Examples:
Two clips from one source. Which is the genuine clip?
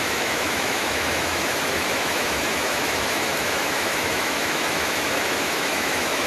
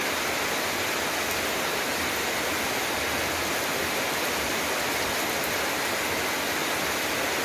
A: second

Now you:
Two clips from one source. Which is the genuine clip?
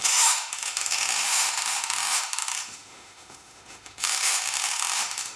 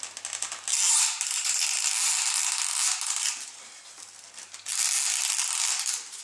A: second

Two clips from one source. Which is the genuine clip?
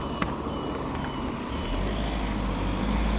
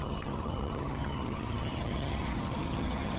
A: first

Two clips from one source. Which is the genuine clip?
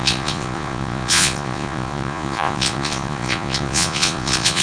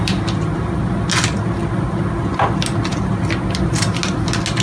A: second